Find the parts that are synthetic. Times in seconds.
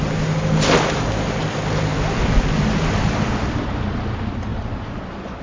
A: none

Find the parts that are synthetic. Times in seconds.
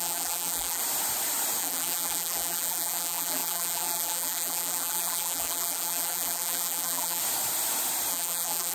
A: 0.0-0.8 (vocoder, BigVGAN v2); 1.6-7.2; 8.1-8.7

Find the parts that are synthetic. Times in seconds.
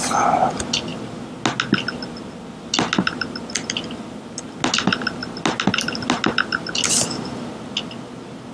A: none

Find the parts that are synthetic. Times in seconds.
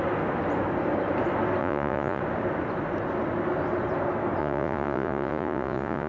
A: 1.6-2.2 (vocoder, Vocos); 4.4-6.1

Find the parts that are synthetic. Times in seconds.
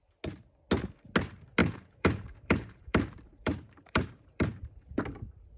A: 1.6-5.0 (vocoder, BigVGAN v2)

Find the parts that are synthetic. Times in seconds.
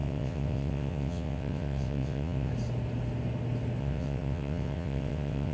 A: 0.0-2.5 (vocoder, WaveNeXt); 3.8-5.5